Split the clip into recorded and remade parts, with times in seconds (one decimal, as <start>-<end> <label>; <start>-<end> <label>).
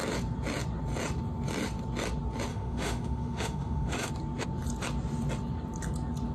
0.0-2.5 recorded; 2.5-4.1 remade; 4.1-6.3 recorded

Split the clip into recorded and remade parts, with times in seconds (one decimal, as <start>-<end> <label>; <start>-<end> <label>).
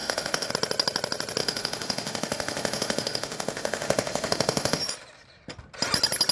0.0-0.5 remade; 0.5-1.4 recorded; 1.4-4.8 remade; 4.8-6.3 recorded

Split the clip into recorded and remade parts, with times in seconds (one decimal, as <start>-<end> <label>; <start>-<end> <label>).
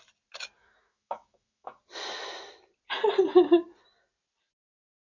0.0-0.6 recorded; 0.6-1.8 remade; 1.8-5.2 recorded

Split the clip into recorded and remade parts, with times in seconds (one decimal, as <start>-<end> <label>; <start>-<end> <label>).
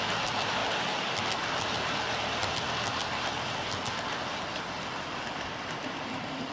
0.0-6.5 recorded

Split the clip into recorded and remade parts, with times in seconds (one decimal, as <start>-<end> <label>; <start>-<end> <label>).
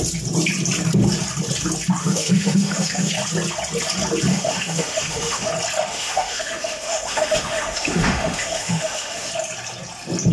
0.0-2.0 recorded; 2.0-3.1 remade; 3.1-4.3 recorded; 4.3-5.5 remade; 5.5-5.9 recorded; 5.9-9.3 remade; 9.3-10.3 recorded